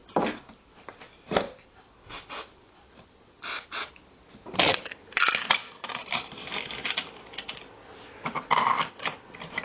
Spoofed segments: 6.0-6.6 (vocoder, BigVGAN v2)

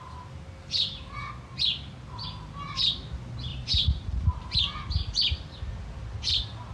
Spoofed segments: 3.5-4.4 (vocoder, BigVGAN v2)

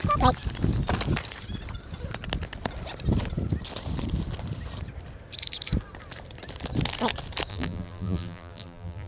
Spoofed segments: 7.5-9.1 (vocoder, BigVGAN v2)

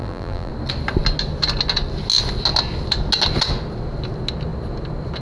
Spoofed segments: 0.0-0.5 (vocoder, BigVGAN v2)

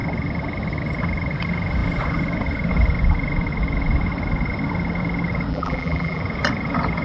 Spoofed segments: 5.5-6.2 (vocoder, BigVGAN v2)

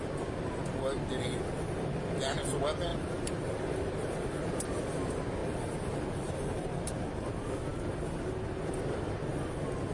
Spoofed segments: 2.9-4.4 (vocoder, BigVGAN v2); 5.4-6.9

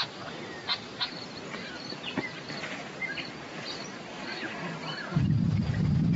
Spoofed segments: 0.7-2.5 (vocoder, BigVGAN v2); 5.1-5.6